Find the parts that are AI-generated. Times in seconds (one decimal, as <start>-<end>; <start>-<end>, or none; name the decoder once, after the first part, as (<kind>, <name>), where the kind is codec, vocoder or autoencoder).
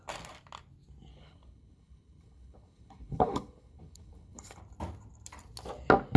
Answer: 1.1-4.6 (codec, HILCodec)